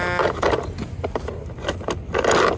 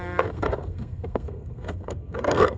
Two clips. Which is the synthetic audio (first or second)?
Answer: second